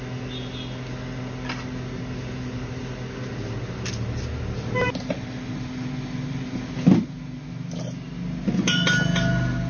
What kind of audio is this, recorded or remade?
recorded